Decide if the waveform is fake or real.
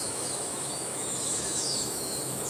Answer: fake